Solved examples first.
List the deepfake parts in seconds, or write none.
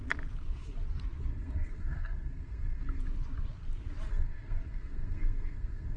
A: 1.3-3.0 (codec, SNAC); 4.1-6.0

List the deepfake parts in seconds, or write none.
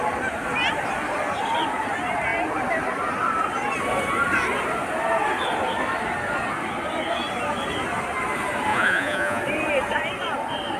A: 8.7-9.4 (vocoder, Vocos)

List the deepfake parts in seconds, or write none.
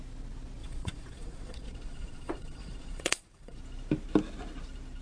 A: 0.6-3.6 (vocoder, Vocos)